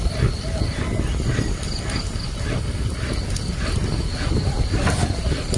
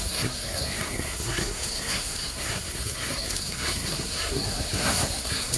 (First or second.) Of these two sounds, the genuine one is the first